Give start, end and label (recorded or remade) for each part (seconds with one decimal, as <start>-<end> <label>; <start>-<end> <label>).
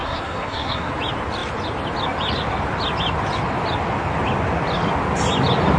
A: 0.0-0.9 remade; 0.9-5.8 recorded